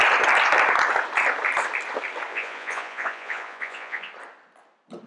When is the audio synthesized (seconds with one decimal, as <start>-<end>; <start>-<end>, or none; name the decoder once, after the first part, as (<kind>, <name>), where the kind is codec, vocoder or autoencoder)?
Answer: 2.3-4.1 (vocoder, Vocos)